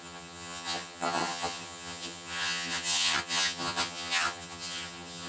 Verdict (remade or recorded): remade